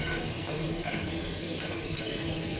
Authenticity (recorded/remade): remade